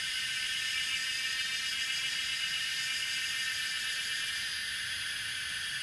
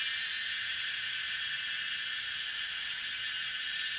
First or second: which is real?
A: second